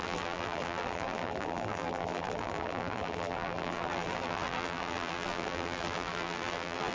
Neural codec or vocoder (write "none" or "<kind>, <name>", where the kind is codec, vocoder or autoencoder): vocoder, BigVGAN v2